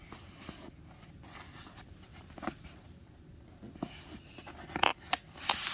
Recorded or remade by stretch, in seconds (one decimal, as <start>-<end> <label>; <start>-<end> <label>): 0.0-4.9 recorded; 4.9-5.7 remade